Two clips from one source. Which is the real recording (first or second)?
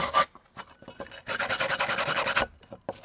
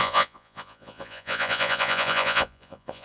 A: first